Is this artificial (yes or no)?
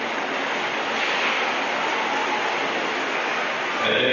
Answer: no